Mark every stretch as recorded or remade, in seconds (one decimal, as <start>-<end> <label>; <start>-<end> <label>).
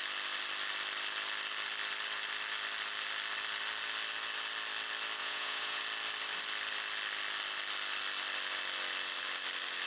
0.0-5.2 recorded; 5.2-5.8 remade; 5.8-9.9 recorded